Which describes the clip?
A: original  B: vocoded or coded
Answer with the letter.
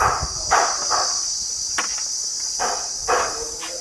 A